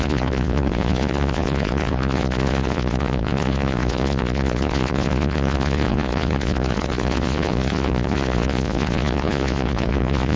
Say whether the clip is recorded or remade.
remade